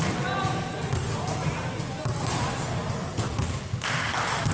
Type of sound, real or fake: real